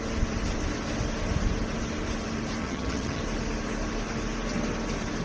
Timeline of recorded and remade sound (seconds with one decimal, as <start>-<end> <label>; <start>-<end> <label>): 0.0-2.6 recorded; 2.6-3.2 remade; 3.2-5.2 recorded